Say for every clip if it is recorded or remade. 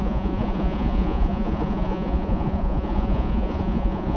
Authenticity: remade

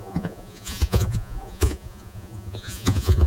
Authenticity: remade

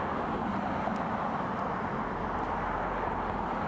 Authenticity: recorded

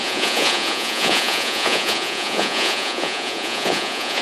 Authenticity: remade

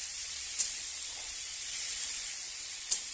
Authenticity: remade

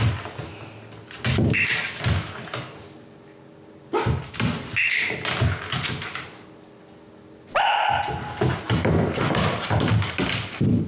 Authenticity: recorded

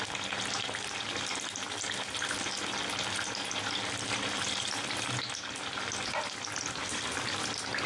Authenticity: recorded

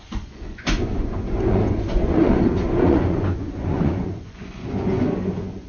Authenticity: remade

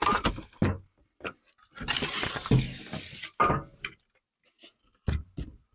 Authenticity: recorded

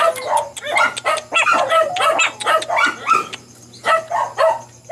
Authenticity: recorded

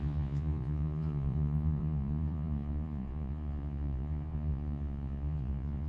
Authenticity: remade